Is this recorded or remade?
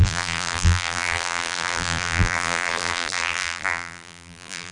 remade